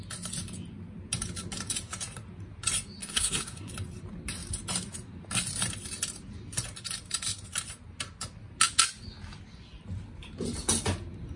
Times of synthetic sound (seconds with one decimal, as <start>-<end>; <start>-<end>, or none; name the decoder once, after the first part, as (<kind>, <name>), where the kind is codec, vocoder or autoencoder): 3.0-3.7 (codec, SNAC)